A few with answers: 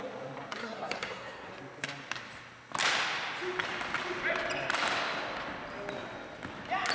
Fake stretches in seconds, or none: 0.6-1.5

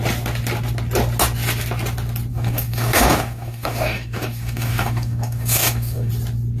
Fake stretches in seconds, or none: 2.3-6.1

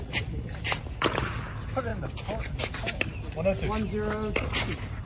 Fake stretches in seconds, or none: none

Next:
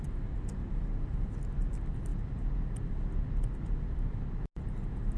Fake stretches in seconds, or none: none